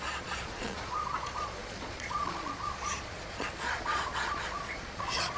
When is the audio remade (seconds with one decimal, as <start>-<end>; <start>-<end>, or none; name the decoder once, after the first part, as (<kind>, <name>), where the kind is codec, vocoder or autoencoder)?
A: 0.0-5.4 (vocoder, Vocos)